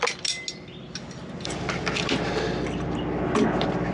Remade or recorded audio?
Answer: recorded